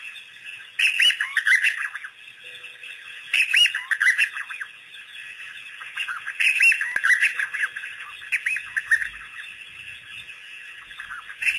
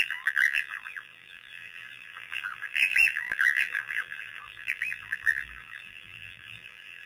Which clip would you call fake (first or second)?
second